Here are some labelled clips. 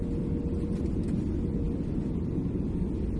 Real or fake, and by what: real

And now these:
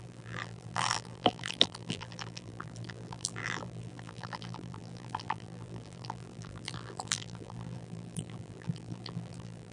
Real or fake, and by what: fake, vocoder, BigVGAN v2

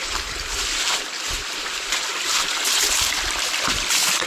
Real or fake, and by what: fake, vocoder, BigVGAN v2